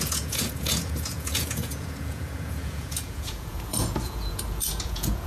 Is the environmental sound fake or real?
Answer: fake